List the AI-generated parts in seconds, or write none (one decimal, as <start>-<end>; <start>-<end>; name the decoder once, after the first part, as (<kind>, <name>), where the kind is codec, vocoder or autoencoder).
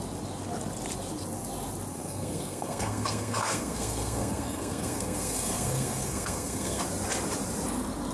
1.9-6.8 (codec, SNAC)